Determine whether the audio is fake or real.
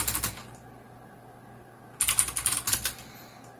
real